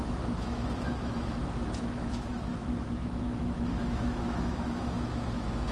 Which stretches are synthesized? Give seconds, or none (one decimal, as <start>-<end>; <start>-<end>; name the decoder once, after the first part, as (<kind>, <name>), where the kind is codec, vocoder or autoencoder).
0.0-5.7 (autoencoder, DAC-VAE)